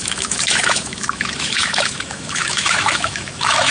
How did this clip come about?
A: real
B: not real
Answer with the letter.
B